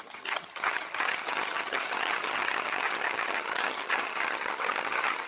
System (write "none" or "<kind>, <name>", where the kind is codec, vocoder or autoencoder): vocoder, HiFi-GAN